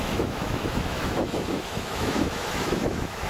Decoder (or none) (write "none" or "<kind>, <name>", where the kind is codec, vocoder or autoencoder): autoencoder, DAC-VAE